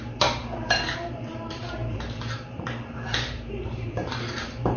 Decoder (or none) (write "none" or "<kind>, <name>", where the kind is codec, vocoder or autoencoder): vocoder, BigVGAN v2